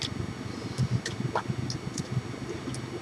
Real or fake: real